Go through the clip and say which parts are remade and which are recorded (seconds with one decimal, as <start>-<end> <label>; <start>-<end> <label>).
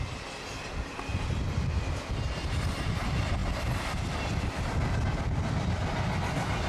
0.0-1.1 recorded; 1.1-2.0 remade; 2.0-6.7 recorded